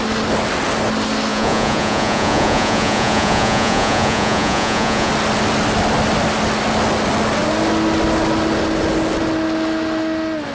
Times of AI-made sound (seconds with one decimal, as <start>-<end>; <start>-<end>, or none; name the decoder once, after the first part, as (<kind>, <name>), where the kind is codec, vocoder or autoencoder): 1.3-5.1 (vocoder, Vocos)